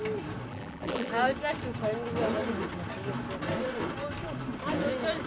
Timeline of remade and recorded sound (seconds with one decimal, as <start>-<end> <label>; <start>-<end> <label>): 0.0-0.5 recorded; 0.5-1.1 remade; 1.1-5.3 recorded